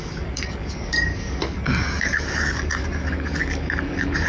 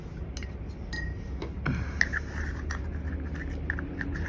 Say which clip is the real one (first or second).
second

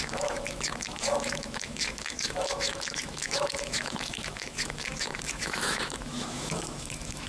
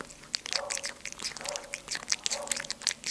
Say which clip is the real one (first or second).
second